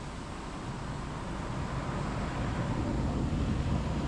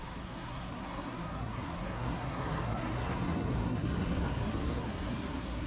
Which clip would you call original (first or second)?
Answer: first